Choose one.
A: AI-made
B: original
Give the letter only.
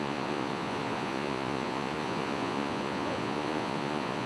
A